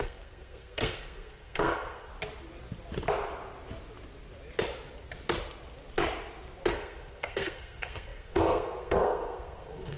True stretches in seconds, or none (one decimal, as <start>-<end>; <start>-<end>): 2.1-6.7